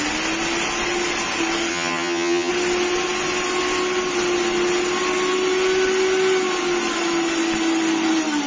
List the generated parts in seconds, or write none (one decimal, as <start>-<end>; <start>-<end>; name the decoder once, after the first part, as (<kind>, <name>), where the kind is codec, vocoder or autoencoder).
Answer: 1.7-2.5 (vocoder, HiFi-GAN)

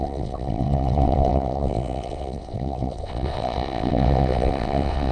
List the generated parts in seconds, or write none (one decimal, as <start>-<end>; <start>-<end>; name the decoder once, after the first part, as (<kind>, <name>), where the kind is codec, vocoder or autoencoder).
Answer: 0.0-5.1 (vocoder, WaveNeXt)

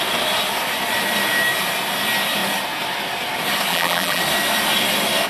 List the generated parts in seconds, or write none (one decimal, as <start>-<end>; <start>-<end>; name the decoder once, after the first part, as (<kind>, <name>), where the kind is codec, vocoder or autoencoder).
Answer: 3.7-4.2 (vocoder, BigVGAN v2)

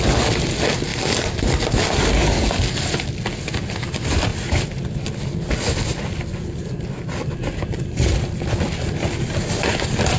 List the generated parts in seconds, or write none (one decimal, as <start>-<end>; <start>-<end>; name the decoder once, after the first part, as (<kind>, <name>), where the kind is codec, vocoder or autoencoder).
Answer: 4.3-4.8 (vocoder, BigVGAN v2); 5.9-8.1